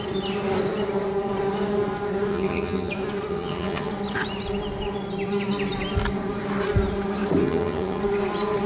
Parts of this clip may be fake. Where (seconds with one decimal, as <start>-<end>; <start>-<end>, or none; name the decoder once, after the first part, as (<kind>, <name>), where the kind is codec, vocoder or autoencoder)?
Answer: 2.3-2.9 (vocoder, HiFi-GAN); 3.3-3.9; 7.4-8.0

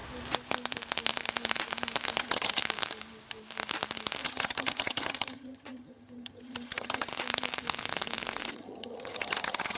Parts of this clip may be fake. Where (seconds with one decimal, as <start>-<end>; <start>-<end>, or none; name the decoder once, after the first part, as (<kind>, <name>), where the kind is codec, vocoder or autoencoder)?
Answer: 2.2-2.6 (vocoder, HiFi-GAN); 4.2-7.1; 8.5-9.8